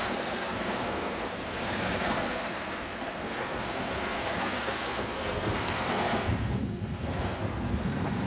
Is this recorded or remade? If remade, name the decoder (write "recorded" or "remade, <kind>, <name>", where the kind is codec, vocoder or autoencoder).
remade, codec, SNAC